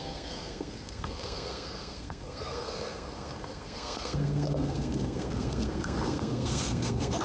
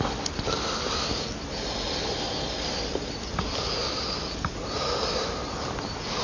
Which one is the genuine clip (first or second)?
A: second